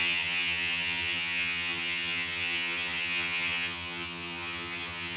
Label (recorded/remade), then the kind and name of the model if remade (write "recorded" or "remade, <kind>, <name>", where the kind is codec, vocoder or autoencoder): remade, vocoder, HiFi-GAN